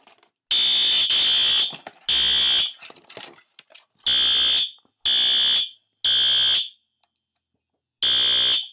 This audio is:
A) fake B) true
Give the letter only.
B